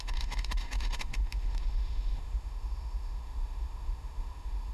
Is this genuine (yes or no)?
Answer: no